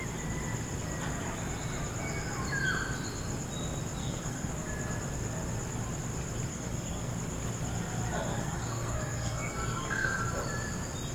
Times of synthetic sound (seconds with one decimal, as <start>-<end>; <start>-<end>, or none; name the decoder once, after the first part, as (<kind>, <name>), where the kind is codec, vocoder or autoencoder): 4.0-4.5 (codec, SNAC); 6.5-7.1; 8.3-10.2